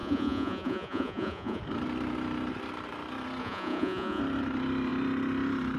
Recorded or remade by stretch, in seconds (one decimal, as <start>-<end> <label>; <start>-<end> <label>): 0.0-1.6 remade; 1.6-3.4 recorded; 3.4-4.2 remade; 4.2-5.8 recorded

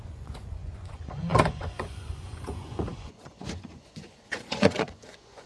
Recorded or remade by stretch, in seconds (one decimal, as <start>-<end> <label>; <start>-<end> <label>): 0.0-5.5 remade

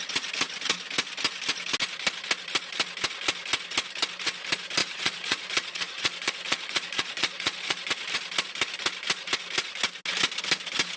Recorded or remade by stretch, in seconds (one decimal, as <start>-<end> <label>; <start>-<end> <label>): 0.0-4.8 recorded; 4.8-7.9 remade; 7.9-11.0 recorded

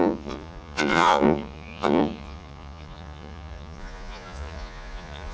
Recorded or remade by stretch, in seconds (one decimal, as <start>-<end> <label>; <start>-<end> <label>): 0.0-5.3 remade

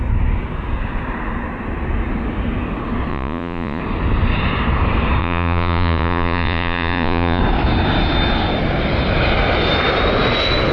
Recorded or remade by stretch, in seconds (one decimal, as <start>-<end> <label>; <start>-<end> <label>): 0.0-3.1 recorded; 3.1-3.8 remade; 3.8-5.2 recorded; 5.2-7.4 remade; 7.4-10.7 recorded

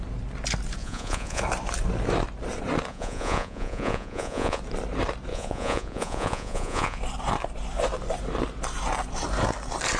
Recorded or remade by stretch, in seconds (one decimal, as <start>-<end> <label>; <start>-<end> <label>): 0.0-0.8 recorded; 0.8-1.4 remade; 1.4-2.9 recorded; 2.9-4.6 remade; 4.6-5.3 recorded; 5.3-7.0 remade; 7.0-10.0 recorded

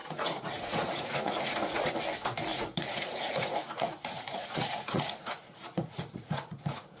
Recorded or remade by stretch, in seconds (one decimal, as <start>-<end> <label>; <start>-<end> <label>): 0.0-1.9 remade; 1.9-2.5 recorded; 2.5-7.0 remade

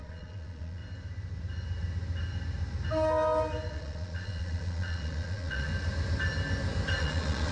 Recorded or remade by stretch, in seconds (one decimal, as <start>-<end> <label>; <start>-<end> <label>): 0.0-0.8 remade; 0.8-3.7 recorded; 3.7-5.7 remade; 5.7-7.0 recorded; 7.0-7.5 remade